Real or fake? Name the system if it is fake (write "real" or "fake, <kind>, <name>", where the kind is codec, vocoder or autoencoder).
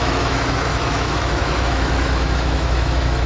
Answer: fake, autoencoder, DAC-VAE